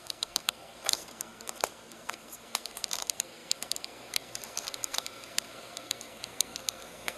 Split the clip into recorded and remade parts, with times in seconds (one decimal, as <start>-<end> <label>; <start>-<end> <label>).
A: 0.0-7.2 remade